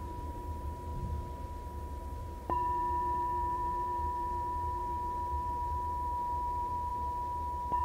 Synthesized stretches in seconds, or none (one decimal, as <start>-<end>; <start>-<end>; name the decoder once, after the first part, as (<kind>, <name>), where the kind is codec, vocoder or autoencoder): 0.0-0.9 (vocoder, BigVGAN v2); 2.2-6.9